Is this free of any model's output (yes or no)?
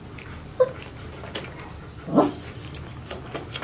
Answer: yes